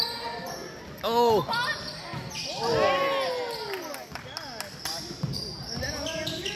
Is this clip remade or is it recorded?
recorded